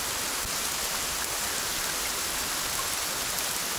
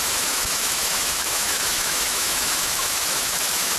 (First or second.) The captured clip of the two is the first